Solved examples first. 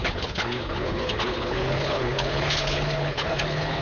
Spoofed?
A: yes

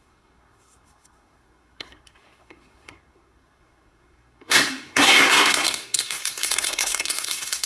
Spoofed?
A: yes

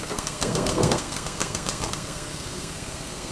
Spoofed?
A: yes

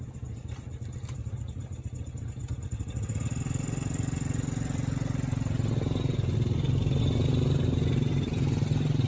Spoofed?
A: no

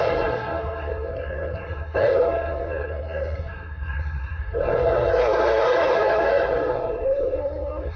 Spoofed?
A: yes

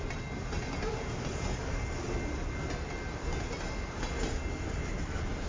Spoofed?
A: no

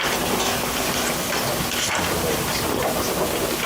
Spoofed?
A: no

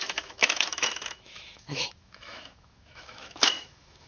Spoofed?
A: yes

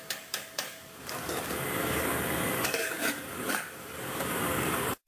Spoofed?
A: yes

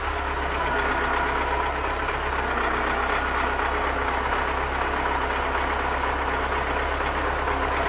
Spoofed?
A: no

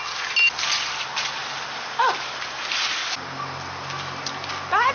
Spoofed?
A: no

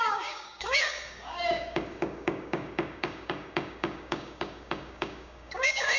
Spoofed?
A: yes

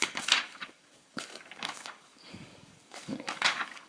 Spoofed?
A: yes